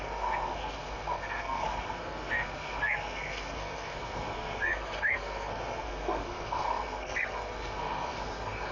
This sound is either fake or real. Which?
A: fake